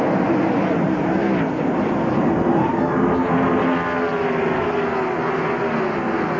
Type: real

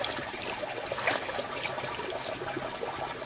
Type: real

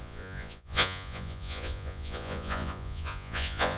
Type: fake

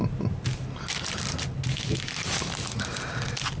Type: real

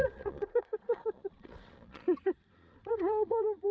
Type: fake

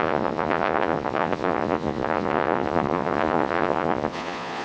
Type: fake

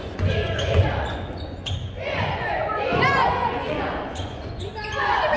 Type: fake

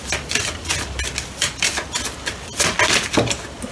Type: real